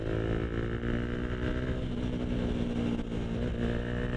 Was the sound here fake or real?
real